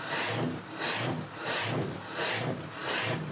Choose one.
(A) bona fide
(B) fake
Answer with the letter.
B